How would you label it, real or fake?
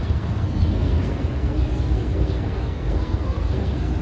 fake